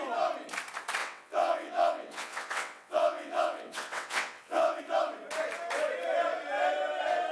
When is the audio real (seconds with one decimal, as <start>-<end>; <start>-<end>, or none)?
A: 0.0-1.0; 4.8-7.3